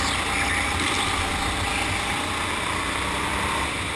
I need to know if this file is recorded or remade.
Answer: recorded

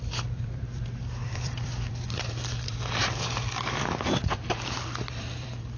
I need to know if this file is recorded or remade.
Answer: remade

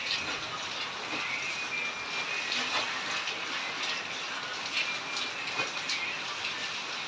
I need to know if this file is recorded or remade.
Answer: recorded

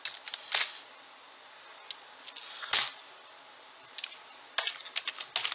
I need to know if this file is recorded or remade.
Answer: recorded